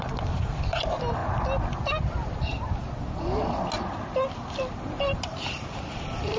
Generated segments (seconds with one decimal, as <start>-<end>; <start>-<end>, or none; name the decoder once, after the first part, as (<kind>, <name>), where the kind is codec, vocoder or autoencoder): 0.0-1.2 (vocoder, BigVGAN v2); 2.1-2.5; 4.3-6.4